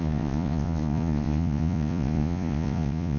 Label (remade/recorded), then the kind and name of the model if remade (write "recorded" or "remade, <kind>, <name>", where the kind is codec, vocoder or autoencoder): remade, vocoder, Vocos